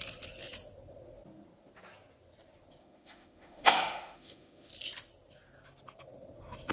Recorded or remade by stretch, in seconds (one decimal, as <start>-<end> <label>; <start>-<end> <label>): 0.0-2.8 recorded; 2.8-4.7 remade; 4.7-6.7 recorded

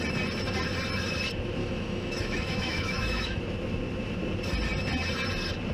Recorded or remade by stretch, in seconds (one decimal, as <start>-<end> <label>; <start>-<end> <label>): 0.0-1.6 recorded; 1.6-3.4 remade; 3.4-5.7 recorded

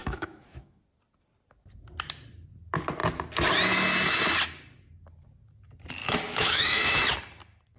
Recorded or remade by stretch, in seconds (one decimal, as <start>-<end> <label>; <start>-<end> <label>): 0.0-0.8 remade; 0.8-6.0 recorded; 6.0-7.0 remade; 7.0-7.8 recorded

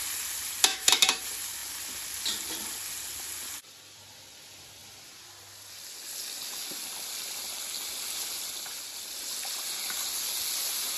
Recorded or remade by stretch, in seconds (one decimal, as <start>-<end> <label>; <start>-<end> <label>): 0.0-0.7 recorded; 0.7-1.2 remade; 1.2-11.0 recorded